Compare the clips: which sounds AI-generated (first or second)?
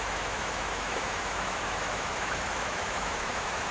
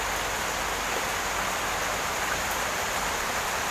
first